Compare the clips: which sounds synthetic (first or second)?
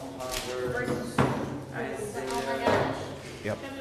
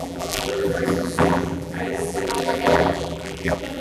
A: second